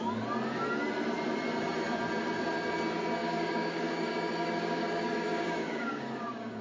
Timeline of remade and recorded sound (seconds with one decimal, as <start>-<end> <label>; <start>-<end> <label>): 0.0-3.2 recorded; 3.2-6.6 remade